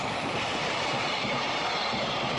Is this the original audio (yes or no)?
no